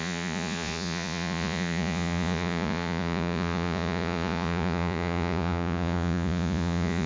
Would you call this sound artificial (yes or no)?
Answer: yes